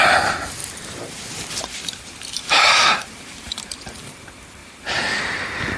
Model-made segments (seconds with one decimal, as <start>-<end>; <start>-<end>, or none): 0.6-4.1; 4.6-5.2